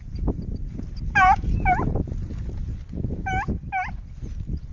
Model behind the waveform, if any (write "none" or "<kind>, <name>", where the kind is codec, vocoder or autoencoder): none